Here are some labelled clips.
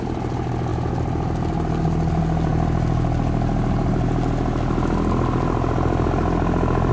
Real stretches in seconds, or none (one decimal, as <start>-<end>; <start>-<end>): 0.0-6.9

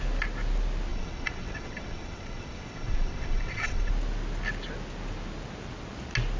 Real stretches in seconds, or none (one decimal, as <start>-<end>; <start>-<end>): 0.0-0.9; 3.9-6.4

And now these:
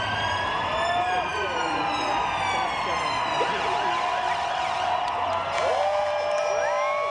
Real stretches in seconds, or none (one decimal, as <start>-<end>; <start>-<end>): 0.0-7.1

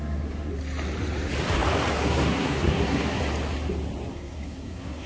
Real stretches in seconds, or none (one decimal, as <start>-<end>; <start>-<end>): 0.5-1.9; 3.2-4.1

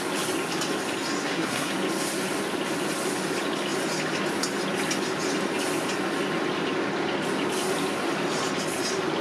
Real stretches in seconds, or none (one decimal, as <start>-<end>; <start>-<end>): 0.0-1.2; 1.7-9.2

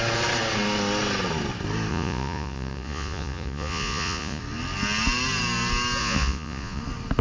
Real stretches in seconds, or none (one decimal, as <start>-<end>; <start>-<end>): 0.0-1.9; 4.4-6.0; 6.8-7.2